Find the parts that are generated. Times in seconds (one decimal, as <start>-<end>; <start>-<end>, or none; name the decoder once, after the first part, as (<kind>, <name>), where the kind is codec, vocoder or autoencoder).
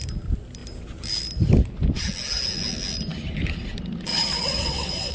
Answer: 4.1-5.1 (vocoder, WaveNeXt)